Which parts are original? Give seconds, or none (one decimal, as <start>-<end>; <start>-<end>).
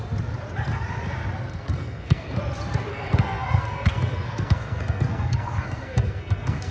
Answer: 0.0-1.5; 2.4-2.9